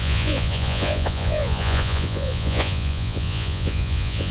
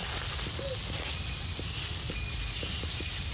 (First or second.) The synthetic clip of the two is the first